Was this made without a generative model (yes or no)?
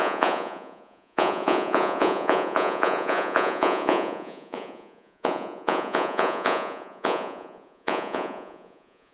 no